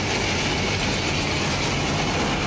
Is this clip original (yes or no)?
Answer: yes